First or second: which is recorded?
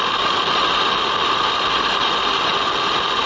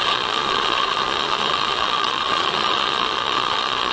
first